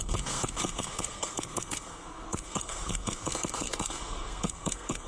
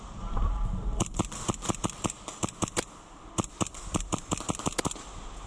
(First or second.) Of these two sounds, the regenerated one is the first